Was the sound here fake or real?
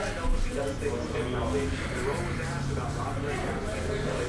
real